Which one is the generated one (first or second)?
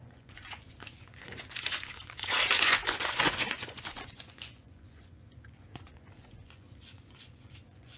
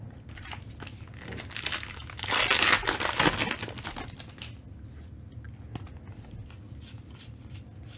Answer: first